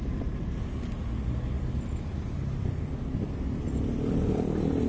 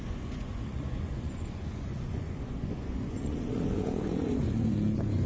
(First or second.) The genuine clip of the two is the first